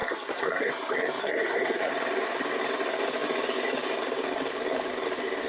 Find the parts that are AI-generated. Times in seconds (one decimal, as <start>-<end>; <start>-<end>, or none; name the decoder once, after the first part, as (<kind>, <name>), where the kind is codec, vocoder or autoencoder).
0.0-0.7 (codec, SNAC); 1.2-1.9